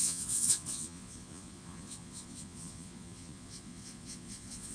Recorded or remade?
remade